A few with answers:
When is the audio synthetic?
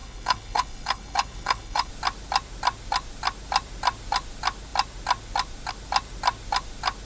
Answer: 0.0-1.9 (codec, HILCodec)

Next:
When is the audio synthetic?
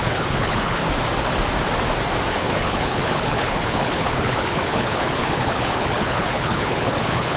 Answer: 0.0-0.8 (codec, HILCodec); 2.3-7.4